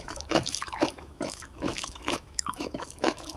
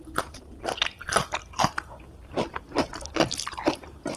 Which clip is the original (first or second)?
second